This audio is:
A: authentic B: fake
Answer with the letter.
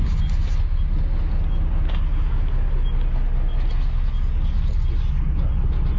A